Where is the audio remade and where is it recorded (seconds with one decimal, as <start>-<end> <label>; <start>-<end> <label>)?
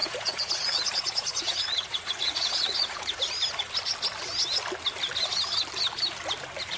0.0-3.2 remade; 3.2-6.8 recorded